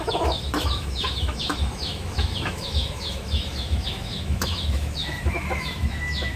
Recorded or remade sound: remade